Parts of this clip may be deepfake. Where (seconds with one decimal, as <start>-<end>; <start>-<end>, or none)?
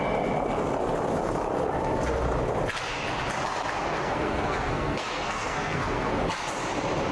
3.8-6.2